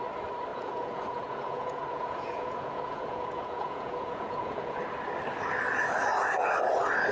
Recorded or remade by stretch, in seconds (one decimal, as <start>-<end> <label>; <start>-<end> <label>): 0.0-0.5 recorded; 0.5-4.8 remade; 4.8-7.1 recorded